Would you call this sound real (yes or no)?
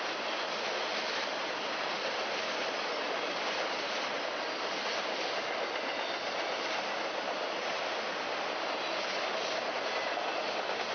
yes